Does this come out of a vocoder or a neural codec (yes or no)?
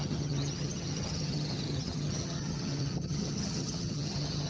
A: yes